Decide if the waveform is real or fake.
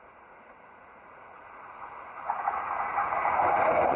fake